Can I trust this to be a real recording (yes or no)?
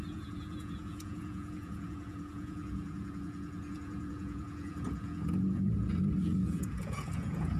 no